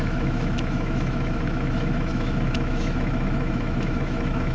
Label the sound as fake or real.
fake